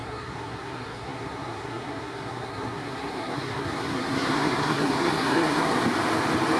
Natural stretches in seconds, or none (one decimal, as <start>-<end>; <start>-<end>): 5.8-6.6